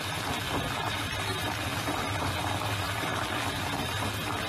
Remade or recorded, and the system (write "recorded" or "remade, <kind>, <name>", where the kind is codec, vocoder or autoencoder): recorded